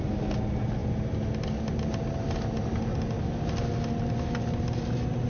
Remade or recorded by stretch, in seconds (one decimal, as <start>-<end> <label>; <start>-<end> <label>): 0.0-5.3 recorded

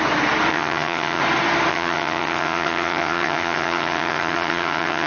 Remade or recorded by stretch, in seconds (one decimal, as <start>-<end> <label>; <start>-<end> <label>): 0.0-0.5 recorded; 0.5-1.2 remade; 1.2-1.7 recorded; 1.7-5.1 remade

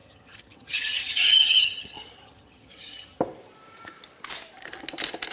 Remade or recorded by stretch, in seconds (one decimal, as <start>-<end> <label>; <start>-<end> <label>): 0.0-3.2 remade; 3.2-5.3 recorded